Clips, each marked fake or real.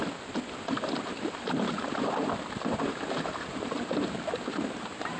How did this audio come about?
real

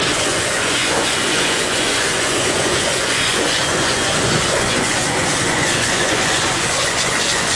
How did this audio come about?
fake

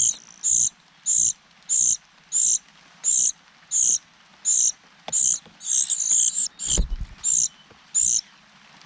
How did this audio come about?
real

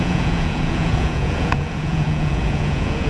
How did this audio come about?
fake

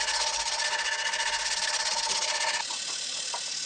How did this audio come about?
real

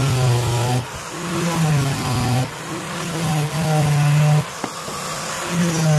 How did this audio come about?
real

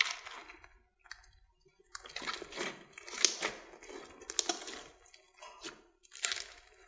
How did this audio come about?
real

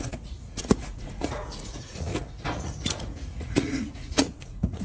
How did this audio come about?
fake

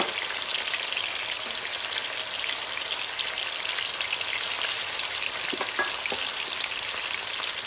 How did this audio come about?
real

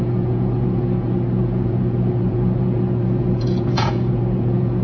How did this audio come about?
fake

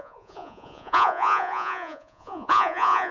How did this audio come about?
fake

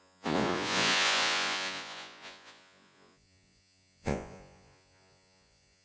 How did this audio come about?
fake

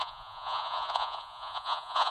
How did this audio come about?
fake